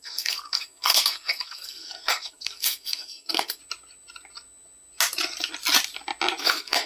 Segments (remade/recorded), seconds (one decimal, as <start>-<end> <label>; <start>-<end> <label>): 0.0-3.6 remade; 3.6-6.4 recorded; 6.4-6.9 remade